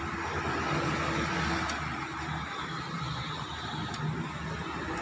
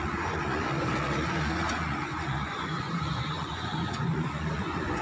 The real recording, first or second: first